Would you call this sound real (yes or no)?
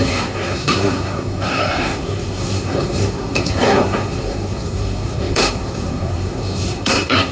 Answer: no